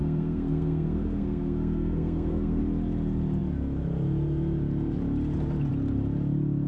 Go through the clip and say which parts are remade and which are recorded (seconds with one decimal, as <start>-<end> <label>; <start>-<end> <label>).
0.0-2.6 remade; 2.6-6.7 recorded